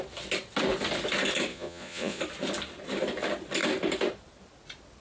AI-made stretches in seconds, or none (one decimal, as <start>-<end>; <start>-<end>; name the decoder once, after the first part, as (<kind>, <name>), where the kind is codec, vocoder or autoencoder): 1.5-2.2 (vocoder, Vocos)